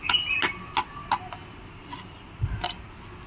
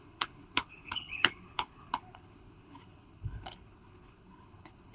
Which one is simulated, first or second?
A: second